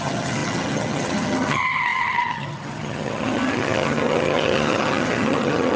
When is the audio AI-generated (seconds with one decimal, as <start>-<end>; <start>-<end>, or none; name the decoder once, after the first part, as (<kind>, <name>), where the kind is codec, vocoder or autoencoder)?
0.0-5.8 (vocoder, HiFi-GAN)